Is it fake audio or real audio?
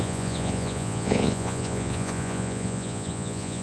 fake